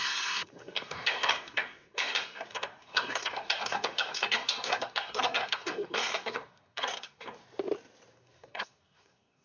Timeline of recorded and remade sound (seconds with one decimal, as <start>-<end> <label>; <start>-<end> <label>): 0.0-7.4 remade; 7.4-8.1 recorded; 8.1-9.4 remade